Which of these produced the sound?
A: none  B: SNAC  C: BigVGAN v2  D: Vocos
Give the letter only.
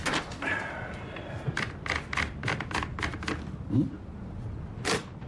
A